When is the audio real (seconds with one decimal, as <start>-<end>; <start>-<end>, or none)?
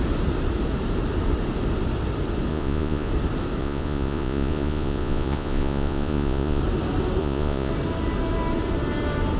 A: 0.0-2.5; 3.1-3.6; 6.6-7.2; 7.7-9.4